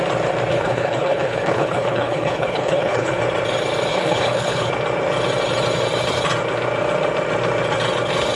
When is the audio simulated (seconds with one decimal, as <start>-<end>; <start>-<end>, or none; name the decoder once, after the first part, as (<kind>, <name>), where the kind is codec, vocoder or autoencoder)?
0.5-3.2 (codec, HILCodec); 3.9-4.7